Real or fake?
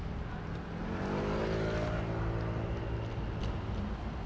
real